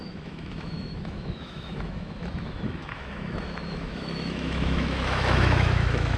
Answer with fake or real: fake